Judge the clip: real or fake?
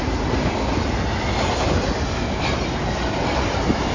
real